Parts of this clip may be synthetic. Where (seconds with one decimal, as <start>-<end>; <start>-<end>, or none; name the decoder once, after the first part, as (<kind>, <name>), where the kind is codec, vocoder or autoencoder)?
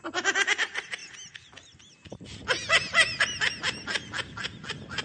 none